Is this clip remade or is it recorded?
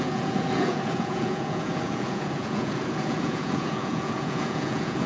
remade